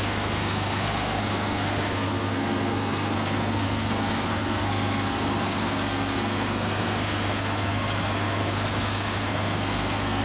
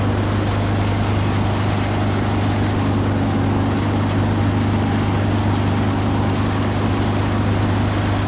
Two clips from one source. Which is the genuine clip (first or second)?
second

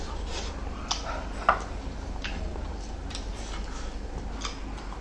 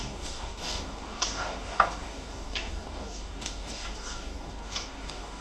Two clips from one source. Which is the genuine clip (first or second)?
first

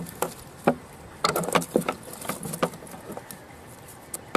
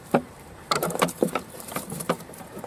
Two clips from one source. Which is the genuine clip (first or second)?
first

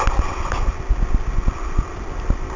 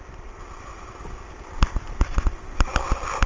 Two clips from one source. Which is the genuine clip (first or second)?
first